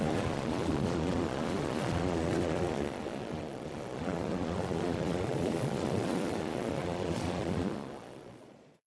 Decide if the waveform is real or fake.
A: fake